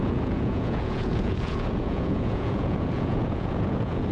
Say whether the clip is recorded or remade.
remade